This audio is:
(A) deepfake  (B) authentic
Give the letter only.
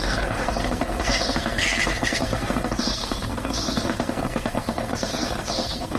A